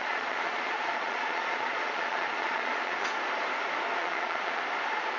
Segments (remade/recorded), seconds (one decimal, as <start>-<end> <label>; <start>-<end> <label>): 0.0-3.1 remade; 3.1-4.0 recorded; 4.0-4.6 remade; 4.6-5.2 recorded